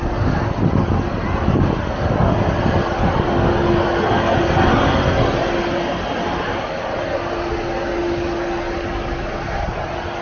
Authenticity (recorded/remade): recorded